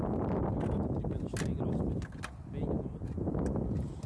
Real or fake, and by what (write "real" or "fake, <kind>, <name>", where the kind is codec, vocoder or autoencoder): real